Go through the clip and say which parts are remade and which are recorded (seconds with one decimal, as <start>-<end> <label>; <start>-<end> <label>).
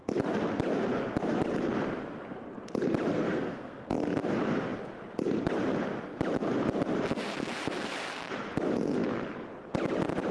0.0-3.1 recorded; 3.1-3.9 remade; 3.9-10.3 recorded